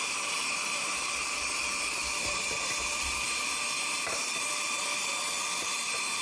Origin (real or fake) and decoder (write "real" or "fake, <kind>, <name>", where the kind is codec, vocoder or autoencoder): fake, vocoder, BigVGAN v2